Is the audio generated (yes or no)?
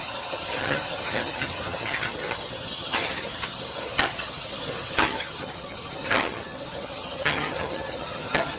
yes